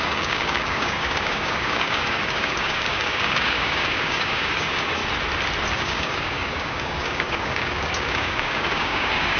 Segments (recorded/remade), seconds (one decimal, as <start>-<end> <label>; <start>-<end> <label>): 0.0-5.0 remade; 5.0-5.7 recorded; 5.7-9.4 remade